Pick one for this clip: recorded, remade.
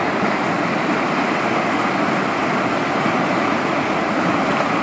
recorded